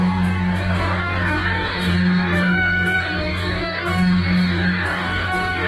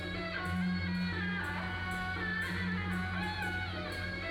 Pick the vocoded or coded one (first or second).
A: first